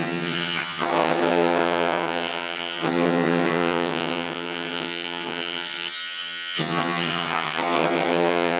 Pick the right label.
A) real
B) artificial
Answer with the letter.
B